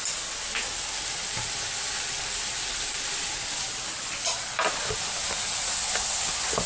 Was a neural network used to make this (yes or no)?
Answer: no